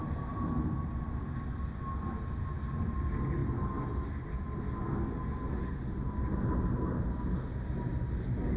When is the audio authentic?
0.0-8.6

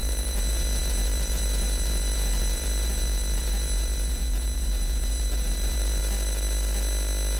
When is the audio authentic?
6.0-7.4

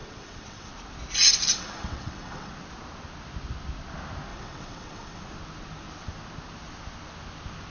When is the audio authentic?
0.7-1.5; 2.5-4.3; 5.2-7.7